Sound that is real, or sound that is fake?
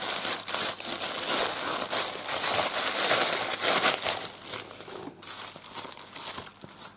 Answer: real